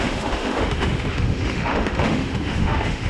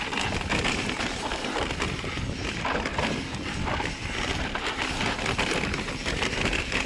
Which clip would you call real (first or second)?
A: second